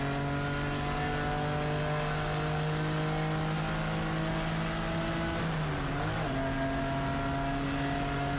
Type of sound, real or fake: real